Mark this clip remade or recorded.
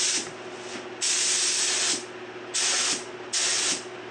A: recorded